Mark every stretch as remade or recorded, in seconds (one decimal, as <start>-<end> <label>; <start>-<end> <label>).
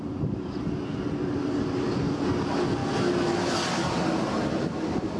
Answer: 0.0-5.2 recorded